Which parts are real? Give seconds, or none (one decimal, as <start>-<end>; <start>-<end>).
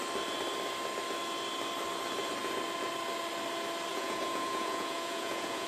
0.0-3.9